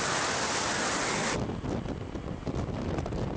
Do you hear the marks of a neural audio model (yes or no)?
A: no